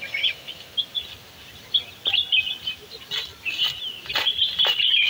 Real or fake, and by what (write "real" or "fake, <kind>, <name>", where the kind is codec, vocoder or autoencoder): real